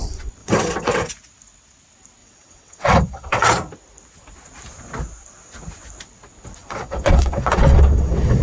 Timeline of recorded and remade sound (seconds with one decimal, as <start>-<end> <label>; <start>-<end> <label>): 0.0-0.4 recorded; 0.4-1.1 remade; 1.1-2.2 recorded; 2.2-3.5 remade; 3.5-6.6 recorded; 6.6-8.4 remade